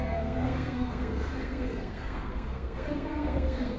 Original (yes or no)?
no